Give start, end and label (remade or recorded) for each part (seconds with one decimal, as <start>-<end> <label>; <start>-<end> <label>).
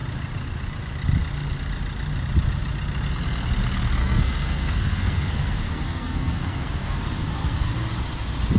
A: 0.0-4.0 recorded; 4.0-7.7 remade; 7.7-8.6 recorded